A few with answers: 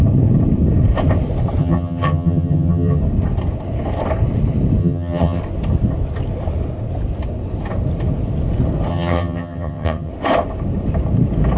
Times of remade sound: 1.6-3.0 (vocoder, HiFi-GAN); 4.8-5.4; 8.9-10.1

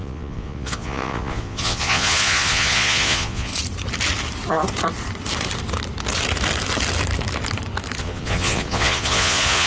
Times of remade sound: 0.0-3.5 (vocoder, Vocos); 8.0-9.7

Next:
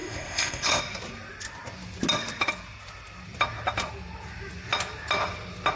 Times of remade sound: 0.0-0.8 (codec, ZipCodec)

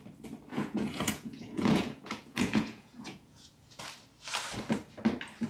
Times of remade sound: 0.5-3.8 (vocoder, Vocos)